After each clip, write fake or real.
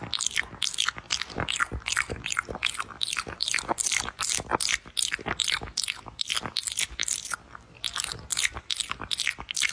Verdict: real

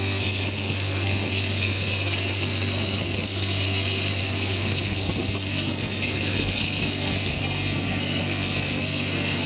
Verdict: fake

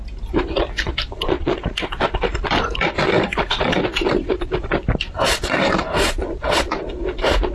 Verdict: fake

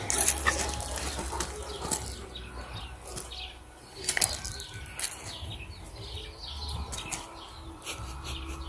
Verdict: real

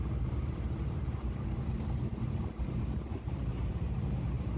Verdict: fake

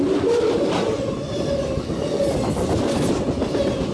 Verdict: real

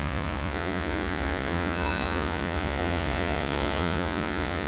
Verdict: fake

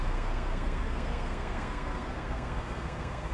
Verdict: fake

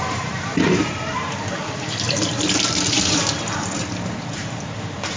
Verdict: fake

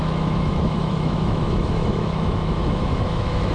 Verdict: fake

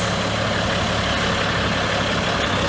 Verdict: real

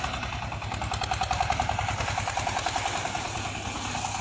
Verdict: real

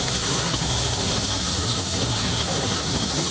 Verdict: fake